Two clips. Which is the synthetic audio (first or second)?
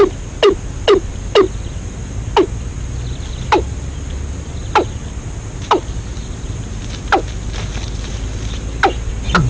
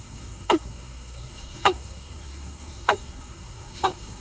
second